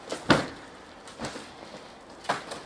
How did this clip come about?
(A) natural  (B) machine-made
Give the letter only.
A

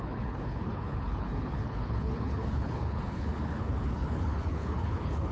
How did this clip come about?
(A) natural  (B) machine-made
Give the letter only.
B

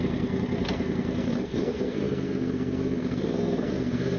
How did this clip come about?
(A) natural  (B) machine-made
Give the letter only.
B